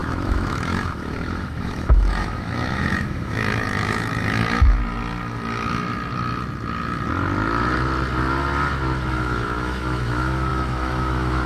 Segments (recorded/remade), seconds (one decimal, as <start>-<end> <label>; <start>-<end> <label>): 0.0-4.8 remade; 4.8-9.1 recorded; 9.1-11.5 remade